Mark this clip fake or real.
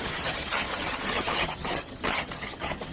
fake